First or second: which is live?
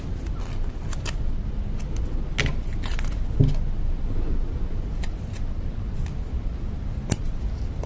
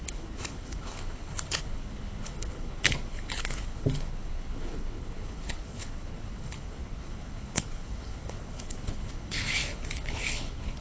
first